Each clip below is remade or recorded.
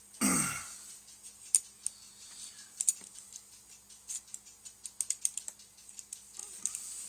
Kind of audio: recorded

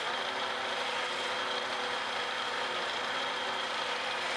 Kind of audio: recorded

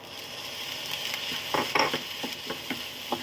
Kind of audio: recorded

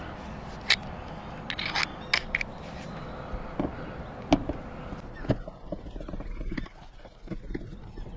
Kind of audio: recorded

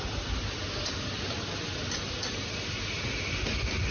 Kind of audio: recorded